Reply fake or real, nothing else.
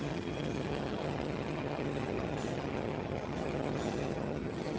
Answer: fake